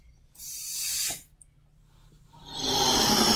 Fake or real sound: real